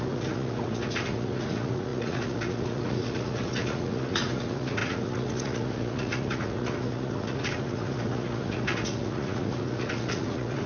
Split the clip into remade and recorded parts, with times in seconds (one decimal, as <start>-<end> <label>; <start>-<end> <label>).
0.0-10.7 remade

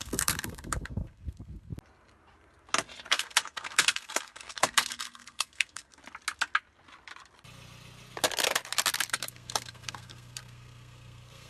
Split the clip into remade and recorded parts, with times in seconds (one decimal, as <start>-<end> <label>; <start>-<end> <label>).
0.0-1.7 remade; 1.7-3.1 recorded; 3.1-6.0 remade; 6.0-9.1 recorded; 9.1-11.5 remade

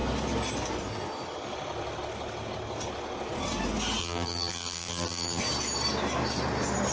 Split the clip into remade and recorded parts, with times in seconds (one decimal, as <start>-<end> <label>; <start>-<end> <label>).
0.0-4.0 recorded; 4.0-5.4 remade; 5.4-6.9 recorded